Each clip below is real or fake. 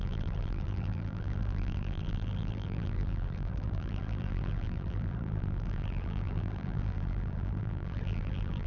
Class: fake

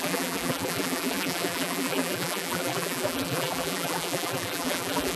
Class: fake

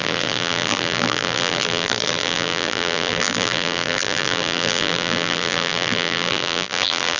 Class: fake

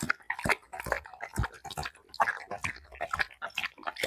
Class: real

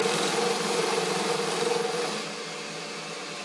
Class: fake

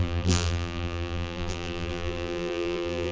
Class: fake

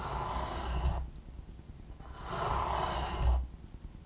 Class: real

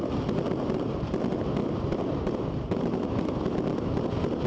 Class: real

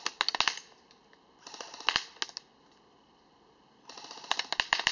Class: real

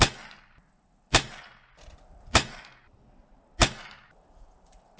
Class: real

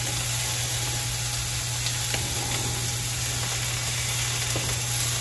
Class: real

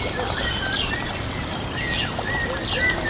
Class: real